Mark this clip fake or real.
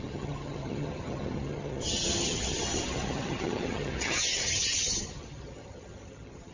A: fake